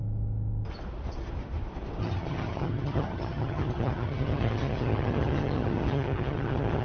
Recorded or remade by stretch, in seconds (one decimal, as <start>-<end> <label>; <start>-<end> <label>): 0.0-2.0 recorded; 2.0-6.8 remade